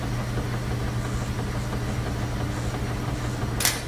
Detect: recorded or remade recorded